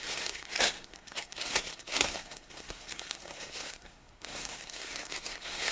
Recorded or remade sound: remade